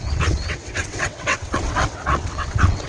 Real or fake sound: fake